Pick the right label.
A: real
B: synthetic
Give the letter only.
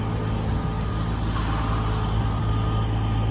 A